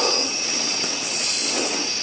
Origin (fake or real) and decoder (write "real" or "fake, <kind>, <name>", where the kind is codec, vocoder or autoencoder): fake, vocoder, WaveNeXt